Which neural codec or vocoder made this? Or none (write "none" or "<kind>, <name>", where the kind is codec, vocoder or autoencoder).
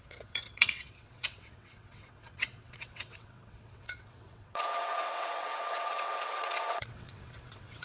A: vocoder, WaveNeXt